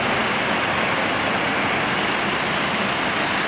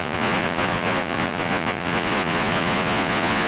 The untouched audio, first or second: first